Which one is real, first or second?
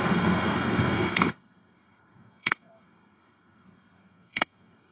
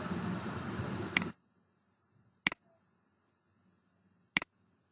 second